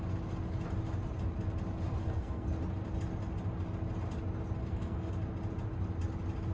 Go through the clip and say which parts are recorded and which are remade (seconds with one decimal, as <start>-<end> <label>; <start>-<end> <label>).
0.0-2.0 recorded; 2.0-2.5 remade; 2.5-4.6 recorded; 4.6-5.1 remade; 5.1-6.5 recorded